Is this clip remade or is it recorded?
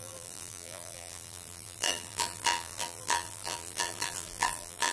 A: remade